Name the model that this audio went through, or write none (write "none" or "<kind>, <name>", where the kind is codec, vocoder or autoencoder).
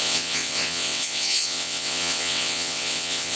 vocoder, WaveNeXt